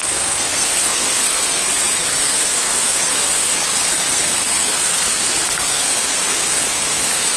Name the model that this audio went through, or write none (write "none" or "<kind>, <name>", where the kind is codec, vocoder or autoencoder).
codec, SNAC